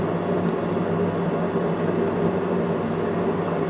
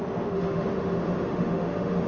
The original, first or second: first